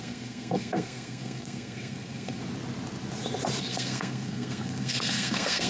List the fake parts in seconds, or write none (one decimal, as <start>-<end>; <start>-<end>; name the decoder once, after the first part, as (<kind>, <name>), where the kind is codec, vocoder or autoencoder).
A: 0.0-2.4 (codec, SNAC); 3.6-5.7